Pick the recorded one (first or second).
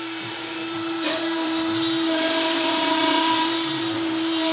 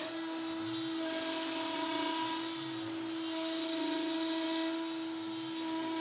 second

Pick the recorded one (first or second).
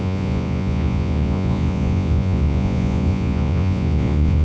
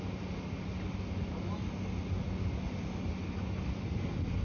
second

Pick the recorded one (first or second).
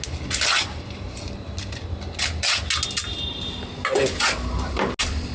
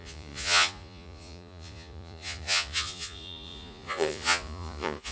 first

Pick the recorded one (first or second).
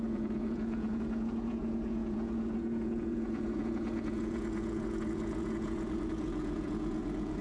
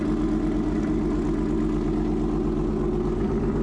second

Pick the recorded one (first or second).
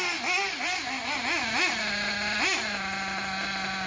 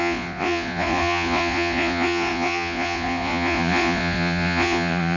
first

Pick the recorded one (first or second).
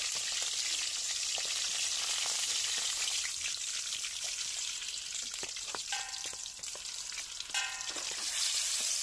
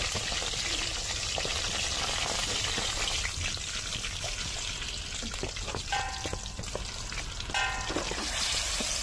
second